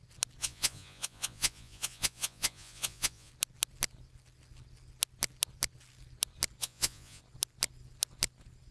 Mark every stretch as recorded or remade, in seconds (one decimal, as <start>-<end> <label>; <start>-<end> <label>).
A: 0.0-0.4 recorded; 0.4-3.3 remade; 3.3-6.6 recorded; 6.6-7.2 remade; 7.2-8.7 recorded